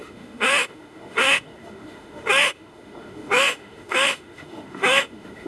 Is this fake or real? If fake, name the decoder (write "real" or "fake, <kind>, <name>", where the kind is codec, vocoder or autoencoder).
fake, autoencoder, DAC-VAE